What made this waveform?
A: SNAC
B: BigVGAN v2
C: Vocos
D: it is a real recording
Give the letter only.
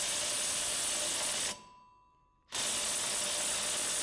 D